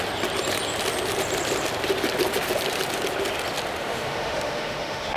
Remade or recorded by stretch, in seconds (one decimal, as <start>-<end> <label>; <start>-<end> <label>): 0.0-3.8 recorded; 3.8-5.2 remade